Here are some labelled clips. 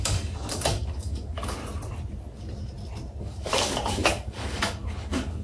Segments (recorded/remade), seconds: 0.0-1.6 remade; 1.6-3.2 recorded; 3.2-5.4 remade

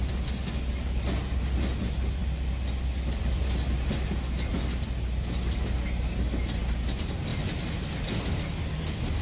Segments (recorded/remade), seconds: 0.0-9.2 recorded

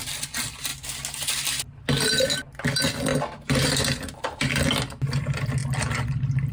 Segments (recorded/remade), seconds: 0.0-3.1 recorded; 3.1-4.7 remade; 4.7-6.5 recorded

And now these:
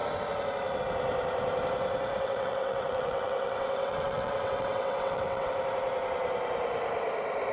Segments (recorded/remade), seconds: 0.0-2.1 recorded; 2.1-5.5 remade; 5.5-7.5 recorded

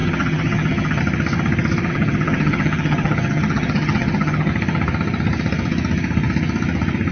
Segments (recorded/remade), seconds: 0.0-1.0 remade; 1.0-1.9 recorded; 1.9-4.5 remade; 4.5-7.1 recorded

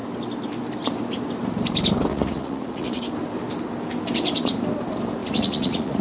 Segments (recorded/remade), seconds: 0.0-2.1 recorded; 2.1-3.0 remade; 3.0-5.2 recorded; 5.2-6.0 remade